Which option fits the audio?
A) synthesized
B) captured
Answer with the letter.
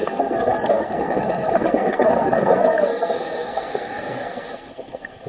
A